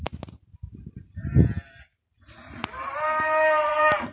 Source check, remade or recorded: remade